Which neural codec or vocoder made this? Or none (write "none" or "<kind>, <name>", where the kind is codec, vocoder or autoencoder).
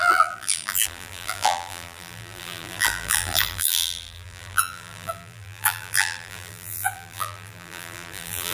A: vocoder, BigVGAN v2